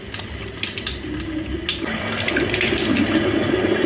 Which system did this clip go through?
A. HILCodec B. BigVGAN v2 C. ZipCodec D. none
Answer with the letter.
D